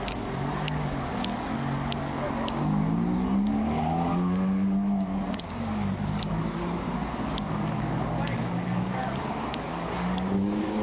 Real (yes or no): no